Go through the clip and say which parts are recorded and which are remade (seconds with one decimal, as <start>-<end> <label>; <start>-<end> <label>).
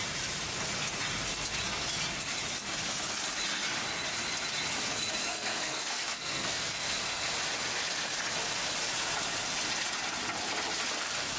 0.0-5.2 recorded; 5.2-7.3 remade; 7.3-11.4 recorded